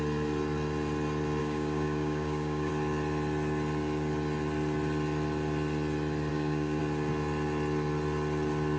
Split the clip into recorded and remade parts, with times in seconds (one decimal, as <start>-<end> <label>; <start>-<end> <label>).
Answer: 0.0-1.4 recorded; 1.4-2.7 remade; 2.7-6.3 recorded; 6.3-6.8 remade; 6.8-8.8 recorded